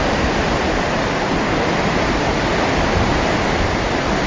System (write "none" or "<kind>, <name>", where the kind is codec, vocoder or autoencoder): none